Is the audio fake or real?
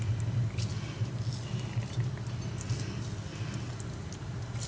real